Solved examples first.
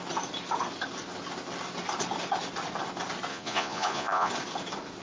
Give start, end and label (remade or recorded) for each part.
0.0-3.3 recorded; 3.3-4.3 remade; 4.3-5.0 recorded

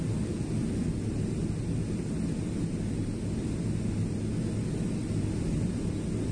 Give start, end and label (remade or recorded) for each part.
0.0-6.3 recorded

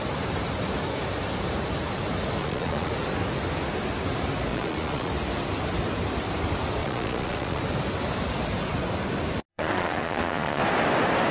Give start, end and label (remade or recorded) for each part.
0.0-2.4 recorded; 2.4-2.9 remade; 2.9-4.5 recorded; 4.5-5.1 remade; 5.1-6.8 recorded; 6.8-7.6 remade; 7.6-9.5 recorded; 9.5-10.6 remade; 10.6-11.3 recorded

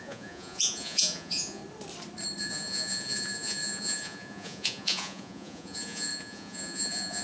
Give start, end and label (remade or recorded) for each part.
0.0-1.6 remade; 1.6-2.4 recorded; 2.4-7.2 remade

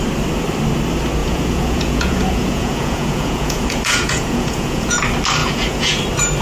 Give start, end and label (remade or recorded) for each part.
0.0-1.2 recorded; 1.2-5.0 remade; 5.0-5.4 recorded; 5.4-6.0 remade; 6.0-6.4 recorded

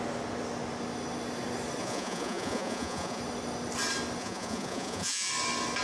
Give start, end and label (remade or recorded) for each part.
0.0-1.8 recorded; 1.8-3.2 remade; 3.2-4.2 recorded; 4.2-5.3 remade; 5.3-5.8 recorded